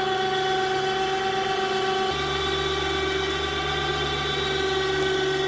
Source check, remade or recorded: recorded